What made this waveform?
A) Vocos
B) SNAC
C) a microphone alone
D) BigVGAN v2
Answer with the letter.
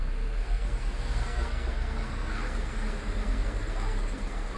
B